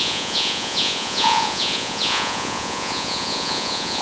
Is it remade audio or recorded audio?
remade